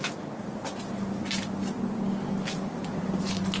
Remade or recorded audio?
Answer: recorded